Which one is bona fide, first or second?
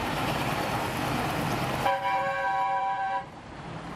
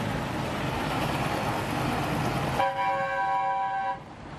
second